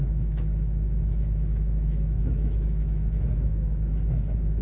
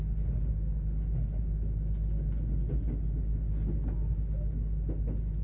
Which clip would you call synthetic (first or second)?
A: first